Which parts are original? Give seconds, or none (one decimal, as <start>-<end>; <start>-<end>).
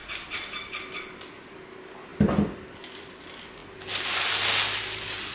0.0-5.3